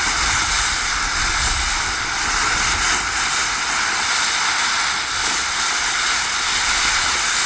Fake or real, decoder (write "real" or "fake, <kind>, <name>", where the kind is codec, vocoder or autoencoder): real